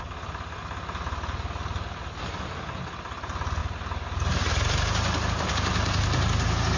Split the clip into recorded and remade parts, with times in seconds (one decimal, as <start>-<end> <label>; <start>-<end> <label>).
0.0-6.8 recorded